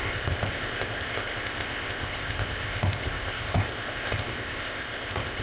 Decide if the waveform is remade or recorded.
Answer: remade